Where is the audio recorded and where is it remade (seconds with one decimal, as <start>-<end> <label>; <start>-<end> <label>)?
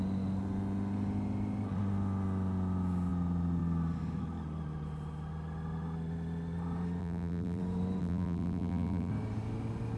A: 0.0-7.0 recorded; 7.0-7.6 remade; 7.6-8.0 recorded; 8.0-9.1 remade; 9.1-10.0 recorded